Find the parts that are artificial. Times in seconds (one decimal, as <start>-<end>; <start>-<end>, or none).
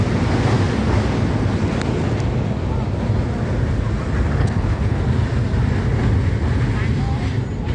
4.4-5.0